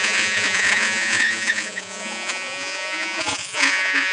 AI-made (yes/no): yes